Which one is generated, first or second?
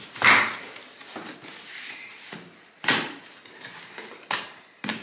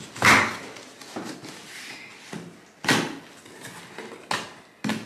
first